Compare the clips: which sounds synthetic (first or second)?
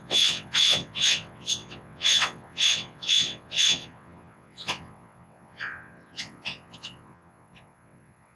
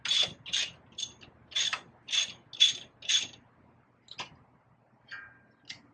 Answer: first